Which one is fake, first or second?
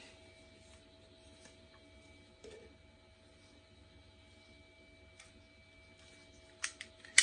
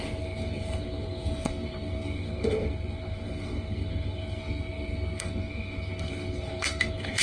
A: second